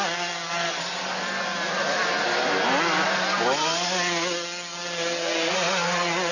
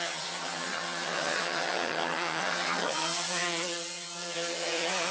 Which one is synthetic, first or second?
second